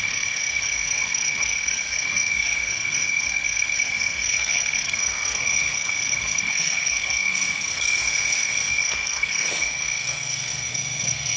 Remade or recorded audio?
remade